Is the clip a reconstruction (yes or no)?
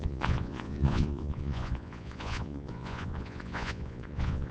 yes